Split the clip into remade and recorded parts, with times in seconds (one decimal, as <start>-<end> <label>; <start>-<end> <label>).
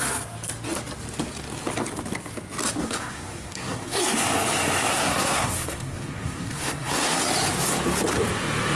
0.0-2.8 recorded; 2.8-4.0 remade; 4.0-4.9 recorded; 4.9-7.2 remade; 7.2-8.8 recorded